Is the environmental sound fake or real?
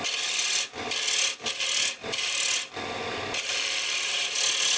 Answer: real